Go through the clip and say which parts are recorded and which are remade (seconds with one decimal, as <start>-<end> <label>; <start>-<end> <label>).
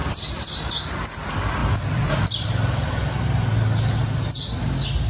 0.0-0.7 remade; 0.7-1.6 recorded; 1.6-2.9 remade; 2.9-5.1 recorded